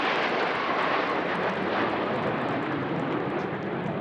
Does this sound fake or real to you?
real